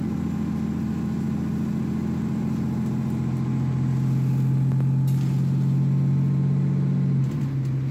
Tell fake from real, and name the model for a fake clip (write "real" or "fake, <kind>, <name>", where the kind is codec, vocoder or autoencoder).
real